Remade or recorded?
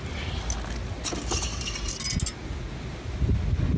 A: recorded